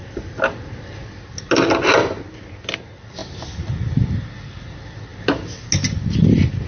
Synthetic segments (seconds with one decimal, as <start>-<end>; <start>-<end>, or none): none